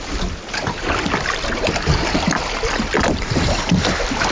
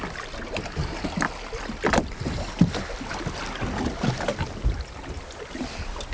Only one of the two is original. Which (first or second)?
second